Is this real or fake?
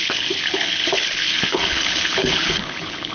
fake